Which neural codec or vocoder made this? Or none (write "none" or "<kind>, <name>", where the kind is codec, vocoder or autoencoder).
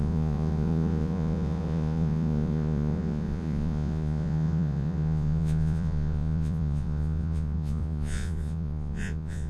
vocoder, Vocos